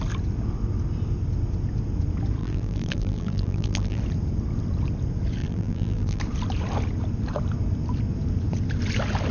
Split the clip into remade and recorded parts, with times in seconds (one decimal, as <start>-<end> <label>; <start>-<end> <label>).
0.0-2.4 recorded; 2.4-4.0 remade; 4.0-5.4 recorded; 5.4-6.2 remade; 6.2-9.3 recorded